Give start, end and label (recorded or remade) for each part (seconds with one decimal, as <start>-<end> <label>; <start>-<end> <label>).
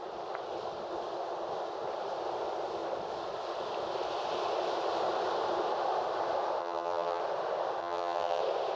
0.0-6.6 recorded; 6.6-7.2 remade; 7.2-7.8 recorded; 7.8-8.4 remade; 8.4-8.8 recorded